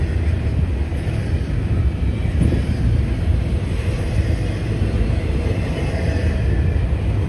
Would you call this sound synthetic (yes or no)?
no